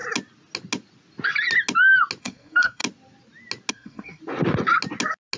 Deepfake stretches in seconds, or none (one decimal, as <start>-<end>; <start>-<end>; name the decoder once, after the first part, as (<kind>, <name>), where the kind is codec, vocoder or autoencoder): 2.2-2.8 (codec, SNAC); 3.7-4.2